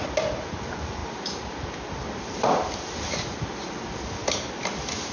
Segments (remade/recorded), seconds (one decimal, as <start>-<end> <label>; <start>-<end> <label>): 0.0-5.1 recorded